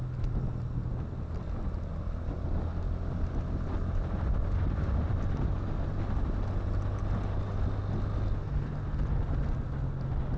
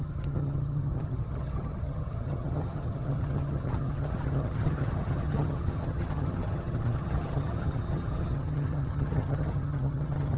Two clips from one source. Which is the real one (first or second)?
first